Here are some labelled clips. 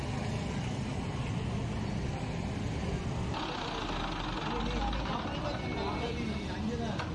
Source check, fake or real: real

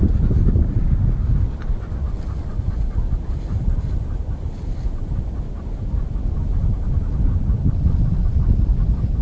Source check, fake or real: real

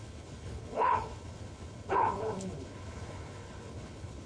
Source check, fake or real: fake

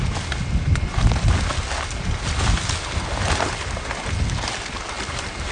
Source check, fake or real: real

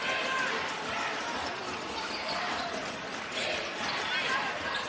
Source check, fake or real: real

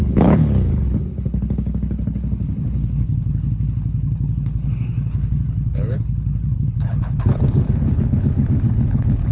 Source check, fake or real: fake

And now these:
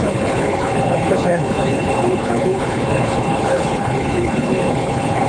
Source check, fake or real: fake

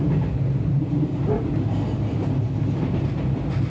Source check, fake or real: real